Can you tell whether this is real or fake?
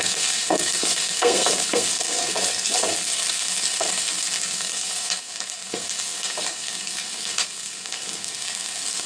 fake